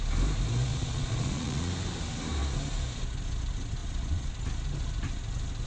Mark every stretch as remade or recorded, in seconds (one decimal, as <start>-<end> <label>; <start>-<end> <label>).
0.0-0.7 recorded; 0.7-1.7 remade; 1.7-3.8 recorded; 3.8-4.3 remade; 4.3-5.7 recorded